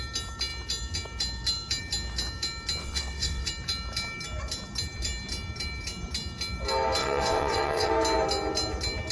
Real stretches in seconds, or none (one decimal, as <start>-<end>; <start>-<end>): 0.0-2.8; 3.5-7.0; 7.9-9.1

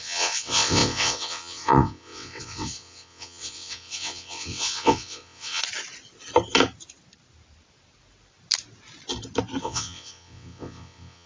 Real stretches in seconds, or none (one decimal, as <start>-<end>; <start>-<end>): 5.6-9.6

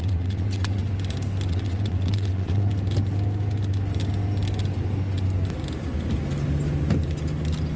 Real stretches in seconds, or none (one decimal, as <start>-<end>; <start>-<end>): 0.8-1.5; 2.7-7.8

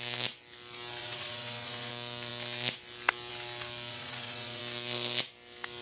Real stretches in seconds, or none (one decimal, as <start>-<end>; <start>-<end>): 0.0-1.0; 1.9-3.9; 4.6-5.8

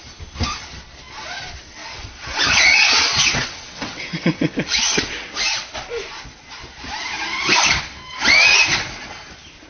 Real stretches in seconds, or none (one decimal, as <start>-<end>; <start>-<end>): 0.0-1.8; 5.3-9.7

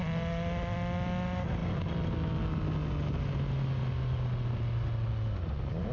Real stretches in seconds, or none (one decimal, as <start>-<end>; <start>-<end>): 0.0-5.9

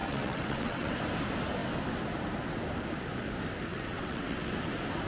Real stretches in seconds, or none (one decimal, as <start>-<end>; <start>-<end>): 0.9-3.7; 4.5-5.1